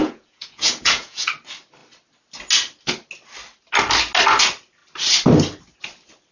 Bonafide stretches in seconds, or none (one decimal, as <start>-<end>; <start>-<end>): 1.3-6.3